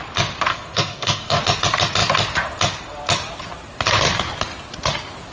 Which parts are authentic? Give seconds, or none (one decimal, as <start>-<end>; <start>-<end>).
0.0-0.5; 1.4-5.3